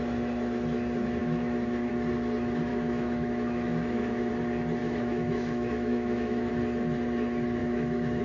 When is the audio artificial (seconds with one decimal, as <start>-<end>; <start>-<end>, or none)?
1.2-1.9; 2.7-4.3; 4.8-6.5; 7.6-8.2